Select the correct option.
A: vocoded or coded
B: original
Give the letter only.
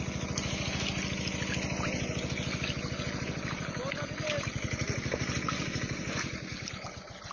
B